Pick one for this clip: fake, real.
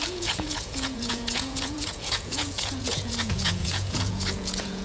fake